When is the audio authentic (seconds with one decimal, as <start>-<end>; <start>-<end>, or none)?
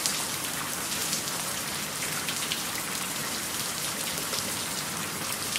0.0-5.6